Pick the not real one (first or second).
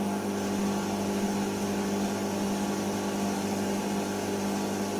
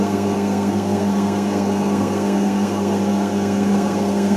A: second